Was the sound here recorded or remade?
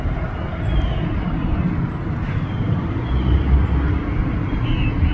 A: recorded